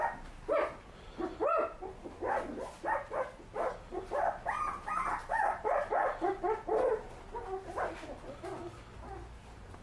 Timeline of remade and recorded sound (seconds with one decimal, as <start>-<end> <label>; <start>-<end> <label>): 0.0-5.2 recorded; 5.2-5.9 remade; 5.9-9.8 recorded